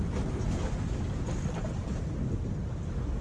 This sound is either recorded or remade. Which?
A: recorded